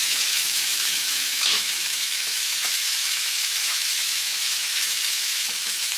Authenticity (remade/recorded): remade